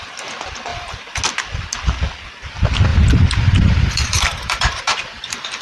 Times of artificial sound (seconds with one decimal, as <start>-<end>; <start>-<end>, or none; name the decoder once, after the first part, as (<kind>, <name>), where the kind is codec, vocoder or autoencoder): 0.7-1.2 (vocoder, BigVGAN v2); 2.9-5.6